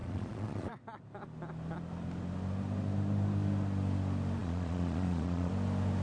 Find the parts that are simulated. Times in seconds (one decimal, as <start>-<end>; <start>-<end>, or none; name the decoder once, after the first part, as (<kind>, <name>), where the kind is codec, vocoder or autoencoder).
0.0-0.8 (vocoder, Vocos); 4.4-5.5